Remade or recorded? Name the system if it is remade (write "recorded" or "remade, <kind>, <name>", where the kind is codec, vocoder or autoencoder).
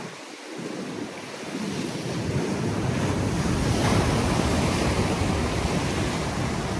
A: recorded